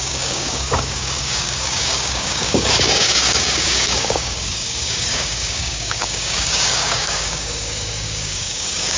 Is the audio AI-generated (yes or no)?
yes